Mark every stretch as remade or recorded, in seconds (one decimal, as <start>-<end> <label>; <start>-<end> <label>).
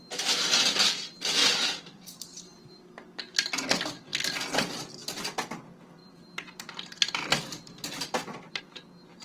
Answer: 0.0-1.4 recorded; 1.4-2.9 remade; 2.9-6.0 recorded; 6.0-8.6 remade; 8.6-9.2 recorded